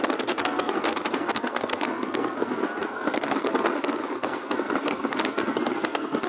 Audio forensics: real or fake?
fake